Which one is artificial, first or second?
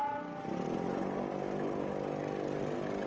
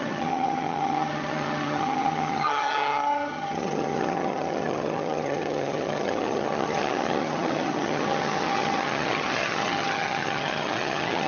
second